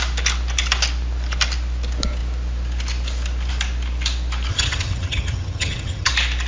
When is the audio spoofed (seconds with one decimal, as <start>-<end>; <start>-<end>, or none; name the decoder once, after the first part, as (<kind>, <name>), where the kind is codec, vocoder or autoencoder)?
4.5-6.1 (vocoder, HiFi-GAN)

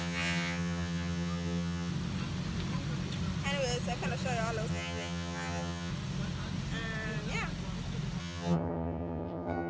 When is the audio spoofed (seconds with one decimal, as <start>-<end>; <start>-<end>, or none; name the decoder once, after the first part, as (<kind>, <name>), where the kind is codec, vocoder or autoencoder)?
0.0-1.9 (vocoder, HiFi-GAN); 4.7-5.9; 8.2-9.7

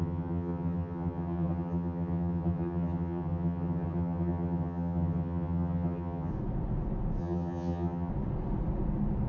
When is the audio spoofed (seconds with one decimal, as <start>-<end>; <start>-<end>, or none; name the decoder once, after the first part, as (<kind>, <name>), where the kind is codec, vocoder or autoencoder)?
0.0-6.3 (vocoder, HiFi-GAN); 7.2-8.1